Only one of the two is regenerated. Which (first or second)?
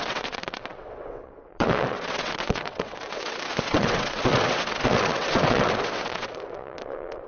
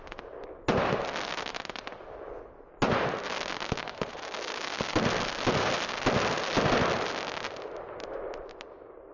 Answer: first